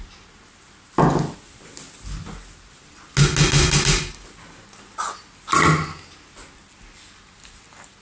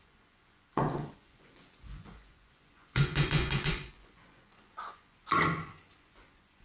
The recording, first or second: first